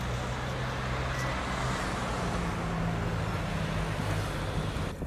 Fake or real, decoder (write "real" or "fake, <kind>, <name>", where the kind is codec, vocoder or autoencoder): real